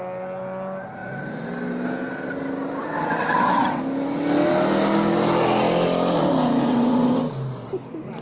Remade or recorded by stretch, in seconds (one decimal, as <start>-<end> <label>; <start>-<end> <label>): 0.0-2.8 recorded; 2.8-3.8 remade; 3.8-6.6 recorded; 6.6-7.2 remade; 7.2-8.2 recorded